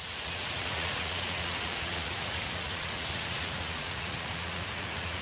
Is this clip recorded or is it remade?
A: remade